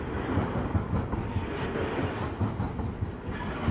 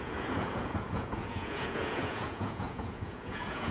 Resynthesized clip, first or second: second